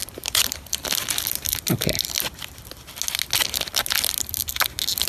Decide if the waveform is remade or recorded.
recorded